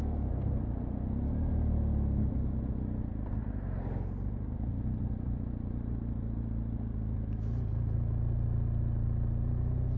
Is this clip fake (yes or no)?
no